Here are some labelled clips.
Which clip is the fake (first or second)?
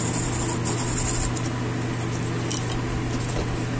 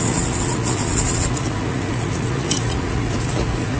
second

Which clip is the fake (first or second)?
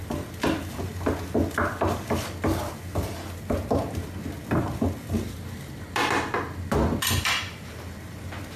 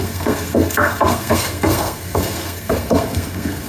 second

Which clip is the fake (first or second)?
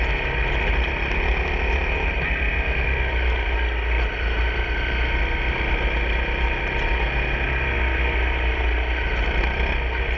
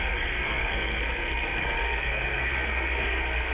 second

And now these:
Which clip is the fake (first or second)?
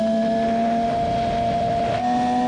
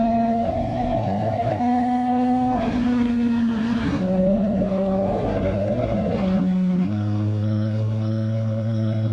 second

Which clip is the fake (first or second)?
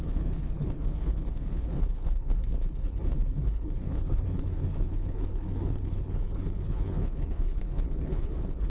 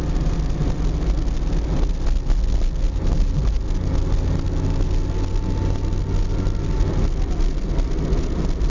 first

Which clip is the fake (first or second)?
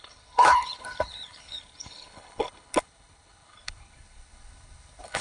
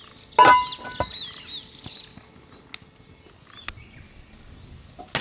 first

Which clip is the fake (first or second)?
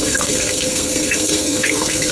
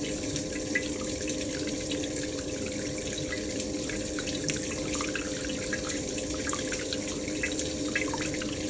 first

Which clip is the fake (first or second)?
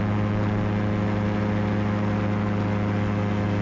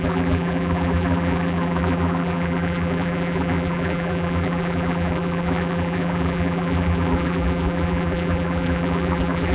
second